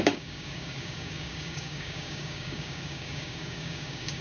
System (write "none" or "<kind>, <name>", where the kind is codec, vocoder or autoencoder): codec, DAC